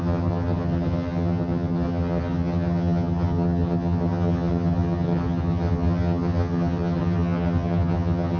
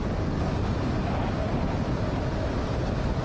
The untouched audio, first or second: second